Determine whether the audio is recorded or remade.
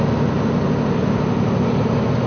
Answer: recorded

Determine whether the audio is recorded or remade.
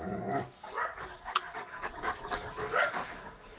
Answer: remade